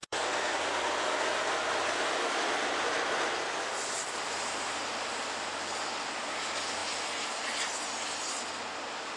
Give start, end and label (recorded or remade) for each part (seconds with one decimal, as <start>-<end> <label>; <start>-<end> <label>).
0.0-0.6 remade; 0.6-9.2 recorded